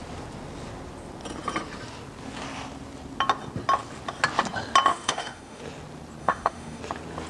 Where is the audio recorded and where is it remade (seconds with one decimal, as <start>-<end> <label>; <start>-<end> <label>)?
0.0-4.9 recorded; 4.9-5.6 remade; 5.6-6.2 recorded; 6.2-6.8 remade; 6.8-7.3 recorded